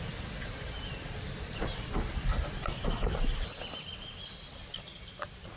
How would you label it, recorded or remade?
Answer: recorded